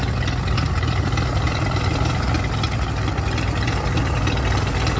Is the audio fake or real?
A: real